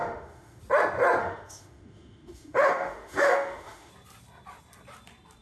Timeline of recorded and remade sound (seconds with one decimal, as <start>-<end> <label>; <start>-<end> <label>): 0.0-0.6 remade; 0.6-1.2 recorded; 1.2-3.9 remade; 3.9-5.4 recorded